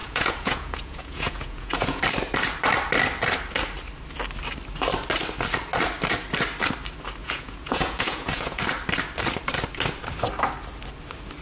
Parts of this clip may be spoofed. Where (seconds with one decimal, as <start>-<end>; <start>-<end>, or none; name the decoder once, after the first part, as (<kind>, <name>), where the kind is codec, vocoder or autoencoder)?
0.0-2.0 (vocoder, Vocos); 7.2-8.6